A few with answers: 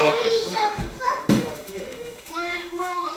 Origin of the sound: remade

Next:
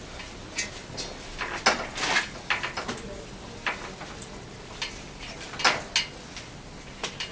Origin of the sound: recorded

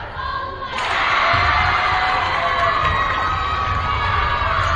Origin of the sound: recorded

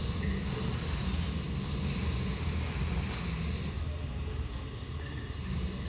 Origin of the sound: recorded